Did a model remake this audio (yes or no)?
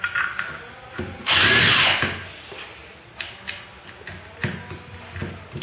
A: no